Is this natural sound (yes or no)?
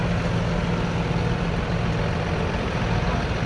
yes